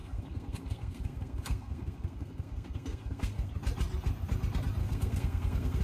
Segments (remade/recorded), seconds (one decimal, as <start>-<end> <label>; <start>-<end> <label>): 0.0-3.5 remade; 3.5-4.8 recorded; 4.8-5.8 remade

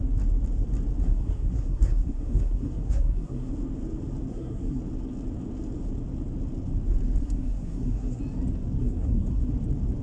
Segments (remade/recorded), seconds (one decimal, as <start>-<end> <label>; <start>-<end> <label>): 0.0-1.0 recorded; 1.0-3.5 remade; 3.5-4.3 recorded; 4.3-4.8 remade; 4.8-7.2 recorded; 7.2-8.2 remade; 8.2-8.8 recorded; 8.8-9.5 remade; 9.5-10.0 recorded

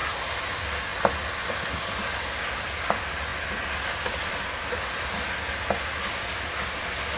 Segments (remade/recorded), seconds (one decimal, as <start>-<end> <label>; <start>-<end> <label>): 0.0-7.2 recorded